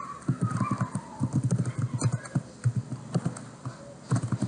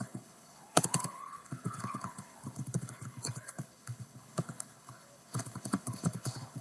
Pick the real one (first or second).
first